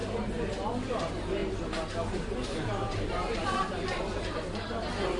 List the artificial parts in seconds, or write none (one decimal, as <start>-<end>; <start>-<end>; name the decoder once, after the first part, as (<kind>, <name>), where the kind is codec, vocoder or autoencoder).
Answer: 0.5-1.4 (vocoder, BigVGAN v2); 2.1-5.2